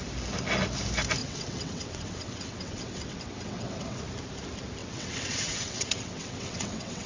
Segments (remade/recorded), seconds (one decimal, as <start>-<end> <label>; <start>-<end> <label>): 0.0-1.2 recorded; 1.2-4.0 remade; 4.0-4.8 recorded; 4.8-7.1 remade